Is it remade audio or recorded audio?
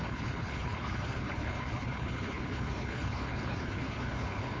remade